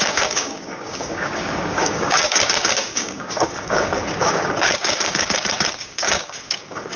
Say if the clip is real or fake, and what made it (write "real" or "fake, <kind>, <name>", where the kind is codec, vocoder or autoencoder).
fake, codec, DAC